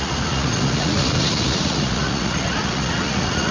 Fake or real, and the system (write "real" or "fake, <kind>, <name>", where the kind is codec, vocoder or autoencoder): fake, vocoder, Vocos